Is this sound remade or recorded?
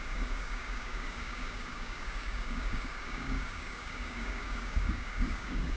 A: remade